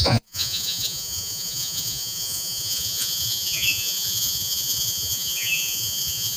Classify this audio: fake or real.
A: fake